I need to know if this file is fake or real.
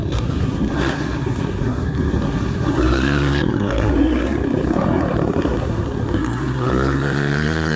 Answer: fake